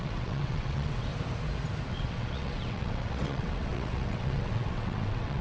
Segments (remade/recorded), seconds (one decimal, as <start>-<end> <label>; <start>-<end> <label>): 0.0-1.1 remade; 1.1-1.9 recorded; 1.9-5.4 remade